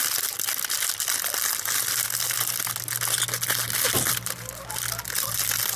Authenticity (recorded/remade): recorded